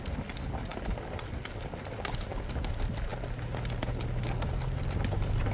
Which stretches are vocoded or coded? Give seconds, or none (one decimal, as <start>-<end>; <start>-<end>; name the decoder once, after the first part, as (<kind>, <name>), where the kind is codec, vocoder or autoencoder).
none